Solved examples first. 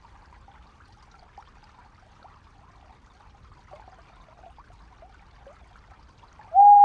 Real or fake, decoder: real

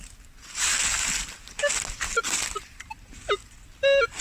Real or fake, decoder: real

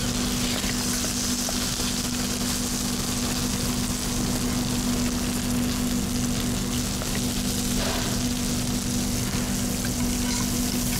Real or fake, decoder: real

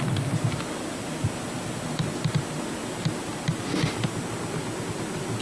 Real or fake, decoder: real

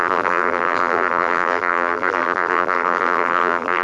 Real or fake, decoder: fake, vocoder, BigVGAN v2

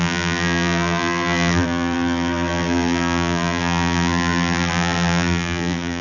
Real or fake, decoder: fake, vocoder, BigVGAN v2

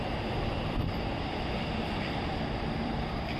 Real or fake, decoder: fake, vocoder, BigVGAN v2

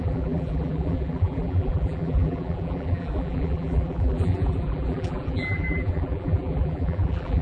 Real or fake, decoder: fake, vocoder, BigVGAN v2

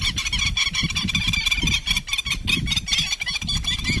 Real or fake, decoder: real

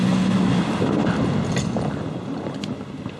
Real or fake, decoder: real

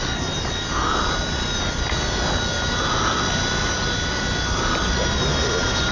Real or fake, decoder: real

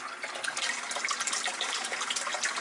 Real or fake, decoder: real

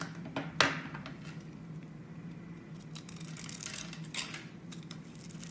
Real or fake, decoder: real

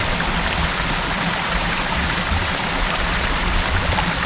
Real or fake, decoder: real